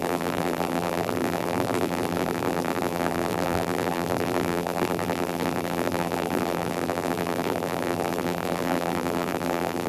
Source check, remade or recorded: remade